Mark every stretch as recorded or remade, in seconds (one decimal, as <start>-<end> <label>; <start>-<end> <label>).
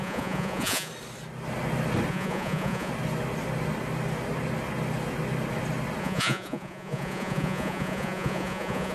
0.0-0.9 remade; 0.9-2.1 recorded; 2.1-2.9 remade; 2.9-6.0 recorded; 6.0-8.9 remade